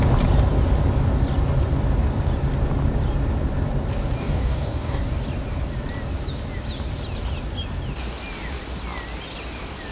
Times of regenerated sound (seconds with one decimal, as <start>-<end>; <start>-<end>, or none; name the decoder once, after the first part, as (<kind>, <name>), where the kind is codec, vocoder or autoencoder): 4.2-5.0 (codec, DAC)